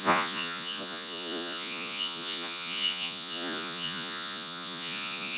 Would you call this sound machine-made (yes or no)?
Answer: yes